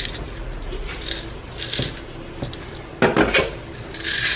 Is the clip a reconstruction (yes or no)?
no